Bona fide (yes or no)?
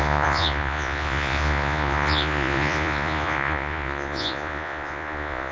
no